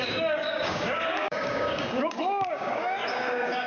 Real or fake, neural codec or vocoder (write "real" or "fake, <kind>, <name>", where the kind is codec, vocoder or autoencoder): fake, codec, DAC